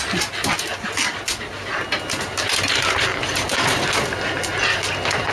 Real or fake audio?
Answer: real